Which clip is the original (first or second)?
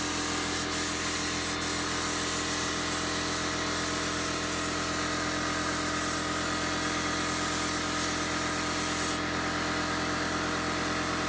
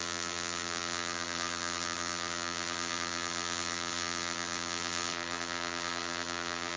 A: first